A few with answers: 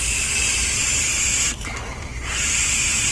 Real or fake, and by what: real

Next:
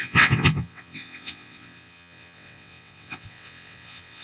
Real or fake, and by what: fake, vocoder, WaveNeXt